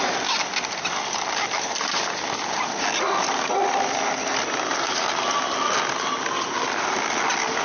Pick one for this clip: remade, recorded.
recorded